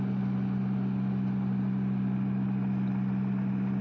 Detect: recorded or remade recorded